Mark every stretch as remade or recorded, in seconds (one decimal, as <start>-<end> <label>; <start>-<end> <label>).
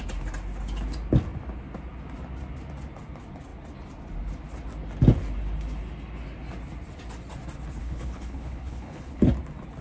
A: 0.0-7.8 recorded; 7.8-9.3 remade; 9.3-9.8 recorded